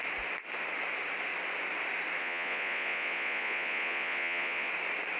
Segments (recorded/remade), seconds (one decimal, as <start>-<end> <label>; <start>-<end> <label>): 0.0-2.2 recorded; 2.2-4.7 remade; 4.7-5.2 recorded